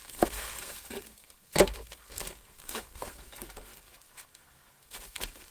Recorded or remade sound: remade